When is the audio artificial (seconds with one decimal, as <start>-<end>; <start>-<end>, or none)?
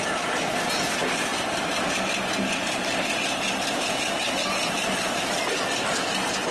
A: none